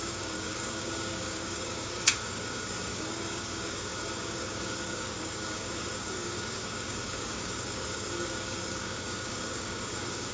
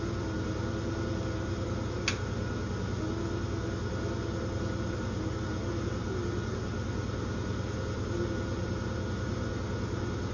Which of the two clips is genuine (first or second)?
second